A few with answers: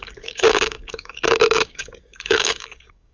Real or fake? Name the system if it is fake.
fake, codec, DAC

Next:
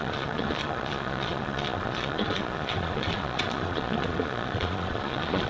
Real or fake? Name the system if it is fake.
fake, vocoder, Vocos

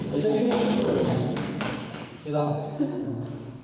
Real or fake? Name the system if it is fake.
fake, codec, SNAC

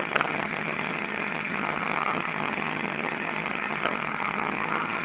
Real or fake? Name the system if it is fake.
fake, vocoder, HiFi-GAN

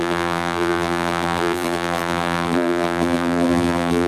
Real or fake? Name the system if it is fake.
fake, vocoder, BigVGAN v2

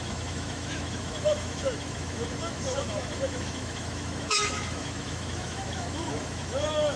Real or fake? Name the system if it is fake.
fake, autoencoder, DAC-VAE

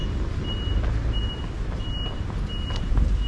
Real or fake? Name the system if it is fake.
real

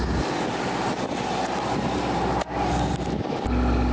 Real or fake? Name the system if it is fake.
real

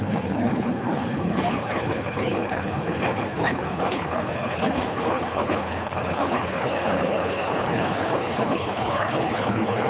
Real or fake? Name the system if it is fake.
fake, codec, HILCodec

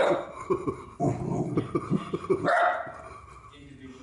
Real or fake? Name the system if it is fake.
real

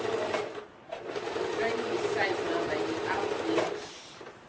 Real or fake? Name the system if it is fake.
real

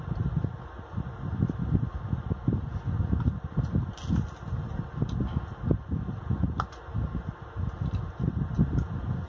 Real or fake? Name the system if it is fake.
real